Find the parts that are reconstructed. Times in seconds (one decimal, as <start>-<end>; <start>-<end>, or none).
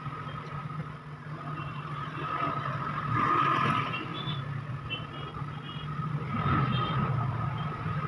none